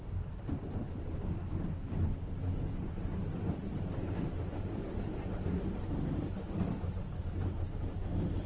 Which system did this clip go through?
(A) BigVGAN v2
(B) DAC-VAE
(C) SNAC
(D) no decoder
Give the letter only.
D